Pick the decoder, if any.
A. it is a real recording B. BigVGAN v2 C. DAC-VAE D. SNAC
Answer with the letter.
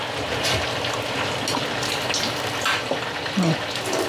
A